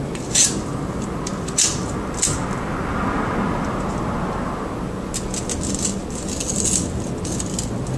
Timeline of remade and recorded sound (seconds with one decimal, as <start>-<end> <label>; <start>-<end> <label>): 0.0-8.0 recorded